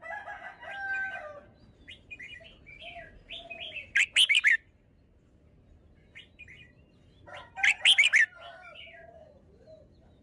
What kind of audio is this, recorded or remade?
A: recorded